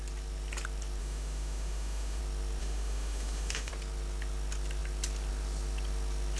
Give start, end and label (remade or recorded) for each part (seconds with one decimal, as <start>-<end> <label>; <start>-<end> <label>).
0.0-1.0 recorded; 1.0-2.2 remade; 2.2-2.6 recorded; 2.6-3.7 remade; 3.7-6.4 recorded